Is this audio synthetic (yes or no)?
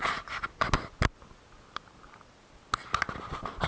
no